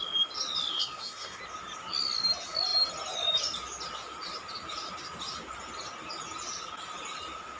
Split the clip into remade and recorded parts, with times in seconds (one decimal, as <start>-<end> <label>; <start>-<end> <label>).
0.0-0.7 recorded; 0.7-1.4 remade; 1.4-7.6 recorded

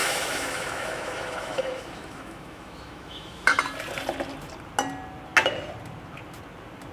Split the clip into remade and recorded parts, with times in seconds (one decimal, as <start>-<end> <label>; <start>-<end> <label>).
0.0-3.6 remade; 3.6-6.9 recorded

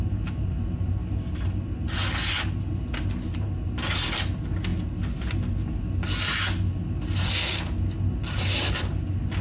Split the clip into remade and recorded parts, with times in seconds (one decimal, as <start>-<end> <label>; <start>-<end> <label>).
0.0-9.4 recorded

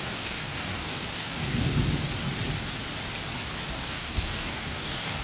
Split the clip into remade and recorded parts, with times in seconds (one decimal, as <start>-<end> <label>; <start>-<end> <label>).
0.0-1.7 remade; 1.7-3.7 recorded; 3.7-5.2 remade

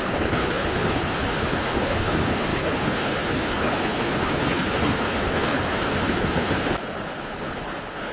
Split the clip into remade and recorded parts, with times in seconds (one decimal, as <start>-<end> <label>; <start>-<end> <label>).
0.0-8.1 remade

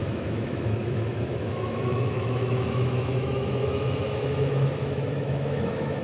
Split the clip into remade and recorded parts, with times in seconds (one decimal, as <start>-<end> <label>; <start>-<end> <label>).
0.0-6.0 remade

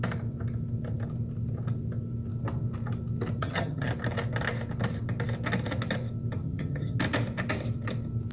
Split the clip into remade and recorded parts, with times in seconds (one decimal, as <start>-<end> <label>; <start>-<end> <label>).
0.0-3.4 recorded; 3.4-3.9 remade; 3.9-6.4 recorded; 6.4-7.0 remade; 7.0-8.3 recorded

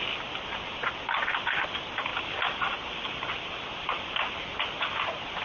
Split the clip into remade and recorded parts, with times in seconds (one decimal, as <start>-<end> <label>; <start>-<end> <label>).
0.0-5.4 recorded